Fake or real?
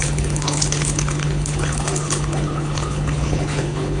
fake